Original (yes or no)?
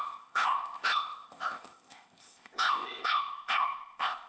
no